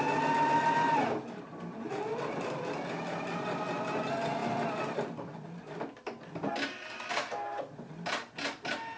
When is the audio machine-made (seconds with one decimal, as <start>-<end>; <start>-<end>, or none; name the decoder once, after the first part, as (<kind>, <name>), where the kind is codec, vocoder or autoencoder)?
none